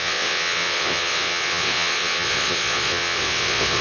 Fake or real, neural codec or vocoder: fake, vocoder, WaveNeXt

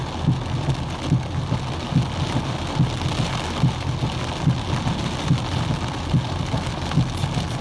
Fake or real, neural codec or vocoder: real